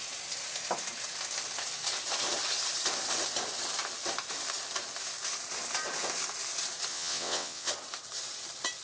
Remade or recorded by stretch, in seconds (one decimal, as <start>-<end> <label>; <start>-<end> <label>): 0.0-6.9 recorded; 6.9-7.7 remade; 7.7-8.8 recorded